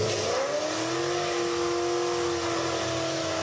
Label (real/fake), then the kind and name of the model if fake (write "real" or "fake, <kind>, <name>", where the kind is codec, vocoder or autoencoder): real